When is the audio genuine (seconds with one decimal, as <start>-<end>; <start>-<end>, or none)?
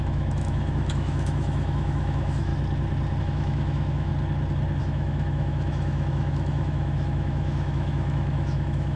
2.5-3.2; 4.1-4.8